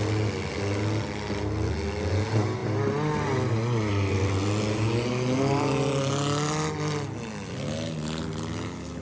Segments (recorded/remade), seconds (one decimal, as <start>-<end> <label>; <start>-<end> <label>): 0.0-9.0 recorded